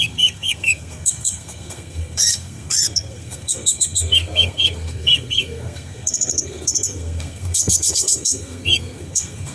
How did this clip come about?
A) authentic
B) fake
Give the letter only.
B